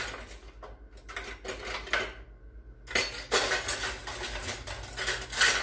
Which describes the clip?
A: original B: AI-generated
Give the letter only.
A